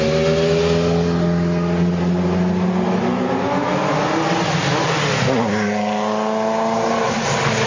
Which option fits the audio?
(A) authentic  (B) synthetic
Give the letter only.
A